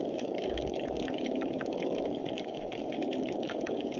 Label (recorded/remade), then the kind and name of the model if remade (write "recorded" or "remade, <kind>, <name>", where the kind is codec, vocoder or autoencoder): remade, codec, DAC